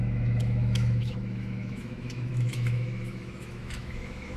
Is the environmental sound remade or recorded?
remade